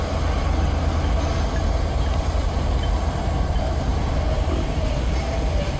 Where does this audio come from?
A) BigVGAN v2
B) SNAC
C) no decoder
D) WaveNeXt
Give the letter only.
C